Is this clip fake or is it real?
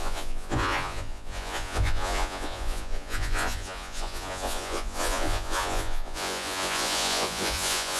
fake